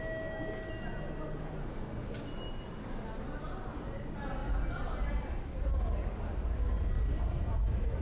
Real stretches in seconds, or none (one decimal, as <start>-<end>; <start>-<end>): 0.0-1.6; 2.1-8.0